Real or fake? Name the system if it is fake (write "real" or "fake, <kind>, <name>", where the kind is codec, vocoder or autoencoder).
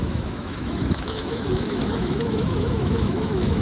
fake, autoencoder, DAC-VAE